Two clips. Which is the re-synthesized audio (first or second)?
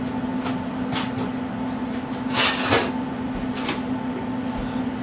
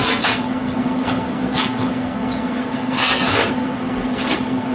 second